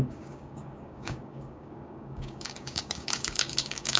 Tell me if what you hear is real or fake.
fake